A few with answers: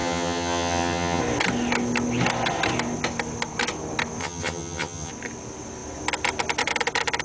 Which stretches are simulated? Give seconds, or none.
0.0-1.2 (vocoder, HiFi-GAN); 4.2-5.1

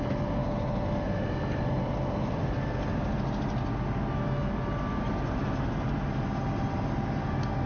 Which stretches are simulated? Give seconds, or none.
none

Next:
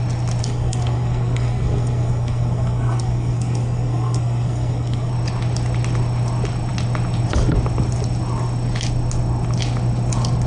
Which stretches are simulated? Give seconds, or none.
0.4-5.1 (codec, SNAC)